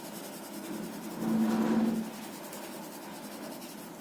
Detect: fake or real real